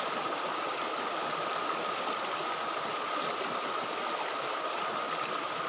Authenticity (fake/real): real